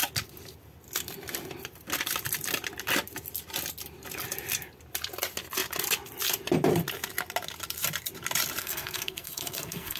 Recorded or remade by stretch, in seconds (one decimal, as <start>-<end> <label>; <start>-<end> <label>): 0.0-8.6 recorded; 8.6-10.0 remade